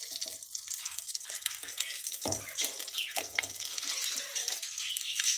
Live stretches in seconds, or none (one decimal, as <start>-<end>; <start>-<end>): 0.0-0.8; 2.4-2.9; 3.9-4.4